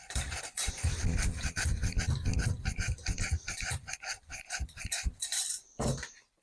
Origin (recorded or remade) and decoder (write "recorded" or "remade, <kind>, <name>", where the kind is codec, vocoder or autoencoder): remade, vocoder, BigVGAN v2